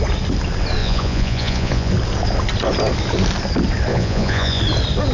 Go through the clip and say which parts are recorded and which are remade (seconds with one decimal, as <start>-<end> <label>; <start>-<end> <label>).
0.0-0.8 recorded; 0.8-1.9 remade; 1.9-3.9 recorded; 3.9-4.6 remade; 4.6-5.1 recorded